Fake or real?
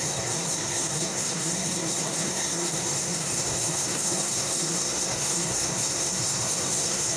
fake